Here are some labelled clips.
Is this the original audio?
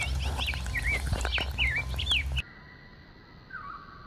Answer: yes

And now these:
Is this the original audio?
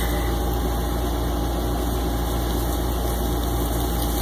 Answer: yes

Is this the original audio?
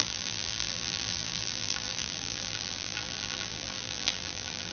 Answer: no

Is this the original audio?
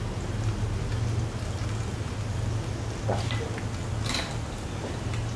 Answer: yes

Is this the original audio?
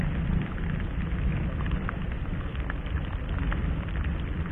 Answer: no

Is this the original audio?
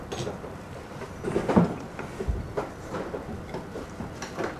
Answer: no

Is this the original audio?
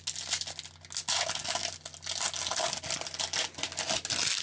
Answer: yes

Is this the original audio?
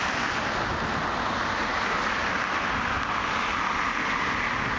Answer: yes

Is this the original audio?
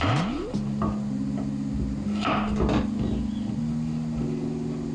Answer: yes